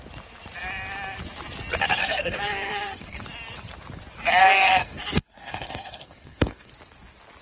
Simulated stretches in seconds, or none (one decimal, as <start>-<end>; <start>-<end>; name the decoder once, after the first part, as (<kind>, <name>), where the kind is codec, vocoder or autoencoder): 2.0-3.2 (codec, SNAC); 4.4-6.7